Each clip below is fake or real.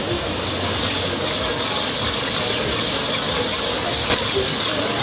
real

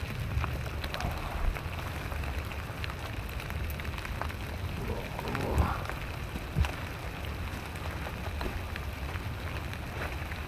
real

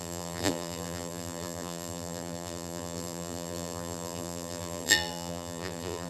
fake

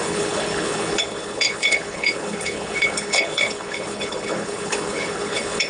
fake